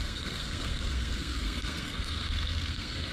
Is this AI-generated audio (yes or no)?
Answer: yes